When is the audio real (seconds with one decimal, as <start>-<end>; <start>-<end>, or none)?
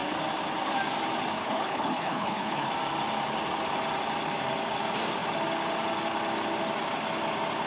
0.0-1.4; 2.7-7.7